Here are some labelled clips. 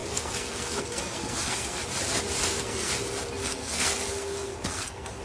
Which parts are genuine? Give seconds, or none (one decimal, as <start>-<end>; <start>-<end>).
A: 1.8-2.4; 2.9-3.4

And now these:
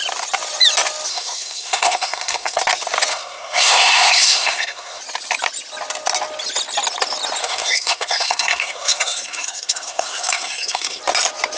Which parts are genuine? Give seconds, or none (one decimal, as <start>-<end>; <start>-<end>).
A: 0.0-1.1; 2.6-3.1; 5.0-7.4; 11.0-11.6

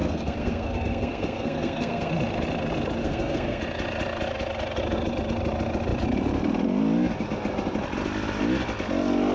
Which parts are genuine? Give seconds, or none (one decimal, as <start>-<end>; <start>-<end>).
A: 2.1-3.0; 3.6-9.3

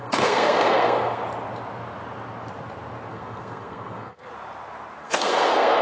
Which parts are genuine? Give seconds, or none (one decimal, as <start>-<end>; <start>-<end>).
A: 1.2-3.1; 4.3-5.0